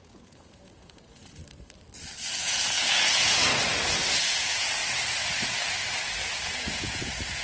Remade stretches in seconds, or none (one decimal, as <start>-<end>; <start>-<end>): 0.0-1.4; 2.4-3.5; 4.2-4.8; 6.3-7.4